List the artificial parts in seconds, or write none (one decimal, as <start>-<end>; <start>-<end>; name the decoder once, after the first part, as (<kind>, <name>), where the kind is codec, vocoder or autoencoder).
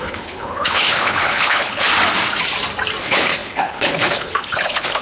0.0-1.9 (codec, HILCodec); 3.0-5.0